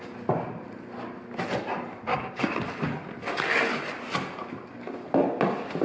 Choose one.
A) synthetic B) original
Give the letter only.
B